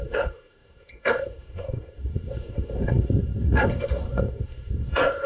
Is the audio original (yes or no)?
no